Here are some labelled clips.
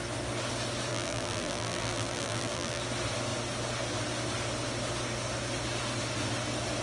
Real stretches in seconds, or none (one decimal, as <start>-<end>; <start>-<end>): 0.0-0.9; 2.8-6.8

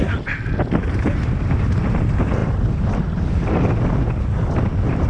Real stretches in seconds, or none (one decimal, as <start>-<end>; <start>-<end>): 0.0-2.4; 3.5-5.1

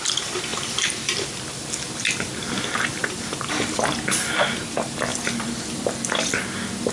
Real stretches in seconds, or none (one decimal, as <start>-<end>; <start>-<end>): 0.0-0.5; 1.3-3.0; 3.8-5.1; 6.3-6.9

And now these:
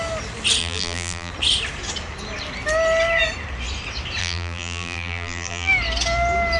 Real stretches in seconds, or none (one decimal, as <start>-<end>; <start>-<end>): 0.0-0.6; 1.3-4.2; 5.7-6.6